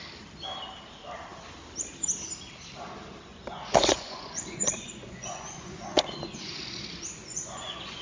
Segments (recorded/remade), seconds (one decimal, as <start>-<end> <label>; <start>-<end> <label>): 0.0-3.3 recorded; 3.3-6.6 remade; 6.6-7.2 recorded; 7.2-8.0 remade